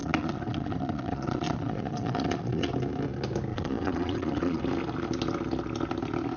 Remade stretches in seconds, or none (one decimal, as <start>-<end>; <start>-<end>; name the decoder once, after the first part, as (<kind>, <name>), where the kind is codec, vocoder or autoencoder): 0.0-2.7 (vocoder, Vocos); 3.5-4.6